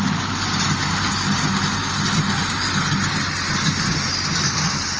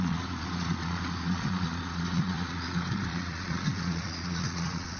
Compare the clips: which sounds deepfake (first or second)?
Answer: second